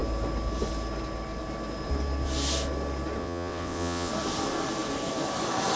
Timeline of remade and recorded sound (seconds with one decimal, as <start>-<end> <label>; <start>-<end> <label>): 0.0-3.2 recorded; 3.2-4.1 remade; 4.1-5.8 recorded